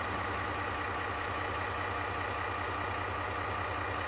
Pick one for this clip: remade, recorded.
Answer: recorded